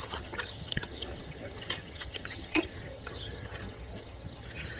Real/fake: fake